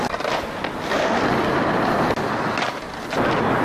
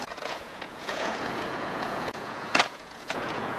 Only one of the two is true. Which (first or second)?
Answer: first